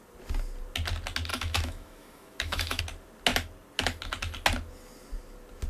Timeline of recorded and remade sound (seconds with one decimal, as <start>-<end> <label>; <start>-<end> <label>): 0.0-1.3 recorded; 1.3-2.8 remade; 2.8-5.7 recorded